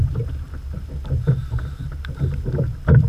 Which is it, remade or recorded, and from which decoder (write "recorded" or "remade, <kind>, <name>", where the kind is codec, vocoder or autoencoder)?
recorded